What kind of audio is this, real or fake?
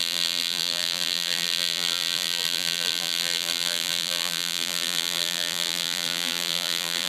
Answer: fake